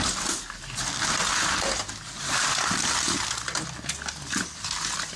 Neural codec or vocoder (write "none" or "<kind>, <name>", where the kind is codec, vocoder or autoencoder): none